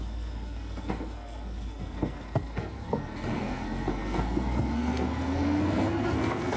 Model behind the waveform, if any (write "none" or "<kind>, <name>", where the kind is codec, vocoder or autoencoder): codec, SNAC